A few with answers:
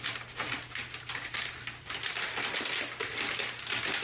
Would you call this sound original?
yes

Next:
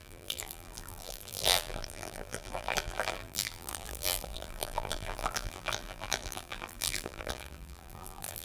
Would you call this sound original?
no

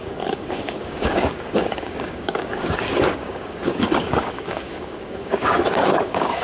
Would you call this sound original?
no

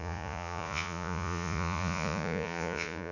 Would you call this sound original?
no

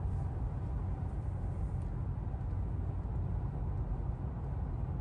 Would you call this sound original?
yes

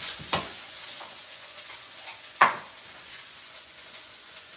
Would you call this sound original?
no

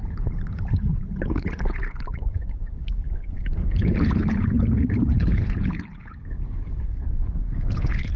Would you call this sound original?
no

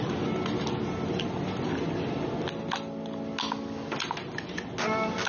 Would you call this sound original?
yes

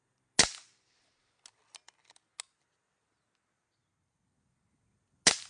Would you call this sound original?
yes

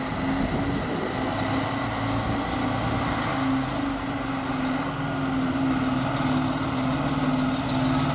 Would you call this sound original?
yes